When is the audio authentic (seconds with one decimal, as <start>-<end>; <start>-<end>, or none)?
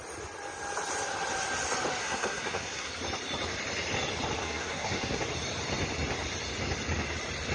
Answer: 0.0-2.0; 2.9-4.4; 5.2-7.5